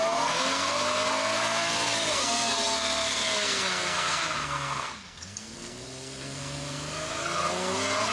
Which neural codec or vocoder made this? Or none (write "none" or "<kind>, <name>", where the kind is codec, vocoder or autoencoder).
codec, SNAC